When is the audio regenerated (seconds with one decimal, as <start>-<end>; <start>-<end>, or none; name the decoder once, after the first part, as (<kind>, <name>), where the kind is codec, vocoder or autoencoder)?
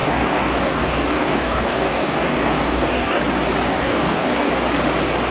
0.0-3.2 (codec, DAC); 3.7-4.5